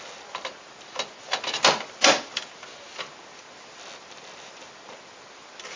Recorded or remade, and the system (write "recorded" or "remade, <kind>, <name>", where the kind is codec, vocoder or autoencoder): recorded